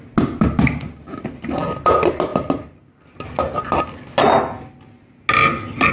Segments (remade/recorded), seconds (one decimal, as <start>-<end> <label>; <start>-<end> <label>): 0.0-5.9 recorded

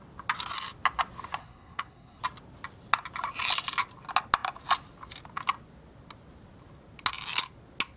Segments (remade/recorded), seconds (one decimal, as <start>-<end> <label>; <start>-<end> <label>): 0.0-1.4 recorded; 1.4-2.2 remade; 2.2-8.0 recorded

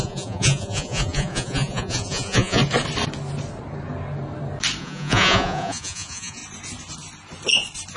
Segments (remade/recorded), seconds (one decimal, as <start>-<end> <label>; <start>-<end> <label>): 0.0-2.6 remade; 2.6-4.8 recorded; 4.8-6.4 remade; 6.4-8.0 recorded